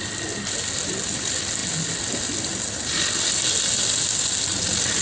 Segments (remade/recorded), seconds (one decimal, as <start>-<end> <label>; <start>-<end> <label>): 0.0-5.0 recorded